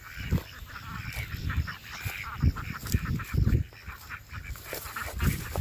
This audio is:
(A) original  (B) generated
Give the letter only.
A